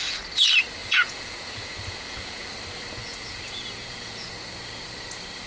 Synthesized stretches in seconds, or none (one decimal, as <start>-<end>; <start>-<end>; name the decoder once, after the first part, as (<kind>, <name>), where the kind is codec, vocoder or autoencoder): 0.8-2.5 (vocoder, Vocos); 3.0-4.3